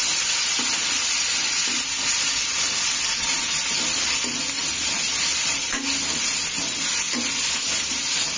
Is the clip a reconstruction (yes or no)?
no